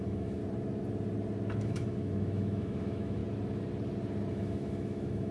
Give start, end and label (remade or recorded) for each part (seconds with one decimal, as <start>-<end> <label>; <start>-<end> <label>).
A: 0.0-0.4 remade; 0.4-1.6 recorded; 1.6-3.2 remade; 3.2-4.3 recorded; 4.3-5.3 remade